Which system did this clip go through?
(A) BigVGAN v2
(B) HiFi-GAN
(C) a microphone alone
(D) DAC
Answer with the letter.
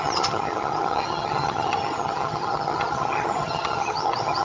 B